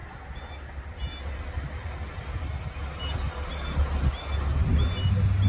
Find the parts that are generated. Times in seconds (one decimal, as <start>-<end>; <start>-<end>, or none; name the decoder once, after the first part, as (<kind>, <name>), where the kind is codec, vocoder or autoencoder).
none